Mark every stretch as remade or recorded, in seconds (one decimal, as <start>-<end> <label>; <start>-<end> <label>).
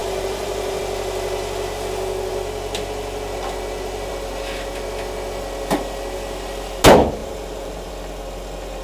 0.0-0.8 remade; 0.8-7.2 recorded; 7.2-7.9 remade; 7.9-8.8 recorded